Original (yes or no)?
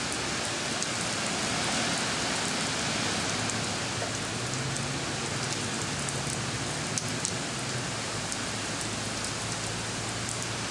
yes